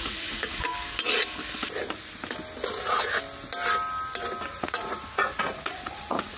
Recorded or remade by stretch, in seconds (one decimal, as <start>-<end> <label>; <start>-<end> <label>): 0.0-0.7 remade; 0.7-4.5 recorded; 4.5-6.4 remade